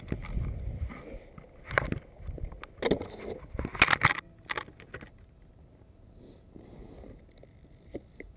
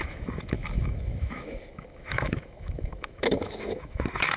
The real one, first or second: first